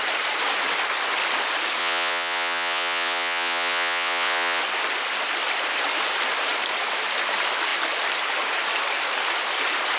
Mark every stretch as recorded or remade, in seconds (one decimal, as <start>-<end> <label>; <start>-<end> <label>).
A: 0.0-1.8 recorded; 1.8-4.6 remade; 4.6-10.0 recorded